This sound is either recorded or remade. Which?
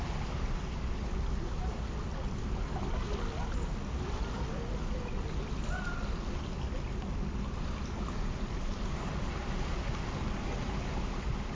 recorded